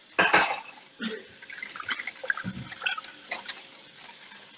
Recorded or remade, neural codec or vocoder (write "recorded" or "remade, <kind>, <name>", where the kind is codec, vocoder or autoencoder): recorded